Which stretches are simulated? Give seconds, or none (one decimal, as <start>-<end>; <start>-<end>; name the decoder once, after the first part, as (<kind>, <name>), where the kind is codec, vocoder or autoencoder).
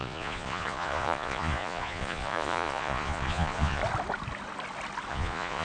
0.0-3.8 (vocoder, Vocos); 5.1-5.6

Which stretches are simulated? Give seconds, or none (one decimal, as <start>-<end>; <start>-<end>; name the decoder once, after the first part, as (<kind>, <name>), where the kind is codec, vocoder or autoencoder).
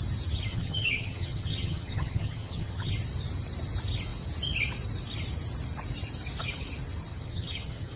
0.5-2.9 (vocoder, HiFi-GAN); 7.1-8.0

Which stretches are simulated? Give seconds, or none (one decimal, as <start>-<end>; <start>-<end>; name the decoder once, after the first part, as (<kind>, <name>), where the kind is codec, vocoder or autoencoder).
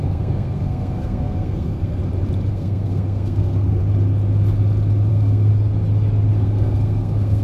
0.0-2.0 (codec, SNAC); 2.5-3.8; 5.1-5.5; 6.3-7.4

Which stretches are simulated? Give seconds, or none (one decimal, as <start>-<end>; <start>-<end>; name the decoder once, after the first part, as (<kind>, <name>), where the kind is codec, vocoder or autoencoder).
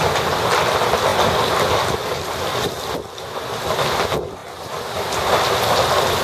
4.4-5.6 (vocoder, BigVGAN v2)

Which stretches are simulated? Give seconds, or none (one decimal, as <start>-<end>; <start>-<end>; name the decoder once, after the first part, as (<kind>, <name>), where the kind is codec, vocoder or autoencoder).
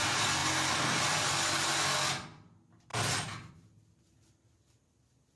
none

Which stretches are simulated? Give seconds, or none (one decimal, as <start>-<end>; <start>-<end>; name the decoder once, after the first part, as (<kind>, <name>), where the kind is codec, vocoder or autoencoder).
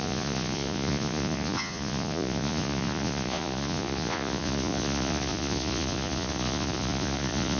0.0-7.6 (vocoder, Vocos)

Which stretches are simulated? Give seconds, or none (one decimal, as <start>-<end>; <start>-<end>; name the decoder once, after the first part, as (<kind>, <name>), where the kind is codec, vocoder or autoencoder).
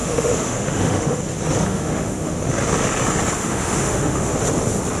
0.0-1.2 (autoencoder, DAC-VAE); 1.7-2.4; 3.4-4.3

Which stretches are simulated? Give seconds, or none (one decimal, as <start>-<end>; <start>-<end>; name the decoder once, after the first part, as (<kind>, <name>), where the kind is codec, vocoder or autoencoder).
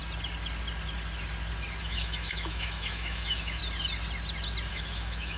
1.8-3.6 (autoencoder, DAC-VAE); 4.7-5.4